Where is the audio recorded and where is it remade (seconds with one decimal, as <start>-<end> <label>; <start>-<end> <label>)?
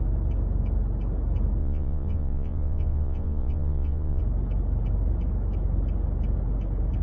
0.0-1.6 recorded; 1.6-4.2 remade; 4.2-7.0 recorded